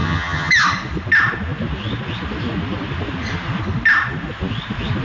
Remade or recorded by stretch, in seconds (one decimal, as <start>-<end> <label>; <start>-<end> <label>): 0.0-0.5 remade; 0.5-5.0 recorded